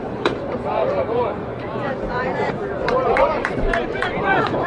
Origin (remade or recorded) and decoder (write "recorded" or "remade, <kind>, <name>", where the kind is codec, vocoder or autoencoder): remade, vocoder, Vocos